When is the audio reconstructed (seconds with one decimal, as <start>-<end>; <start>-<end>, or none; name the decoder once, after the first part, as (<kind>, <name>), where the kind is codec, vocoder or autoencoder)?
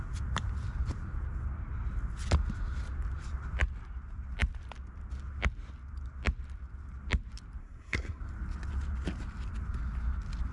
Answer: 7.6-8.2 (codec, SNAC)